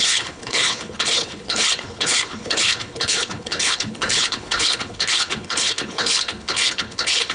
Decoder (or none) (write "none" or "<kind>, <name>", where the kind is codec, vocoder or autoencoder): codec, HILCodec